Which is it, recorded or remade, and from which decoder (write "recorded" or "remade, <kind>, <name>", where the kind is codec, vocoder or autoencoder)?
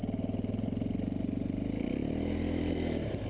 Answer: recorded